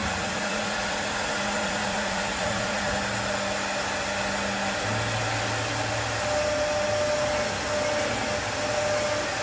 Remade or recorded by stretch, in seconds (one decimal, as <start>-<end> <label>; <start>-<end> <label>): 0.0-2.9 remade; 2.9-9.4 recorded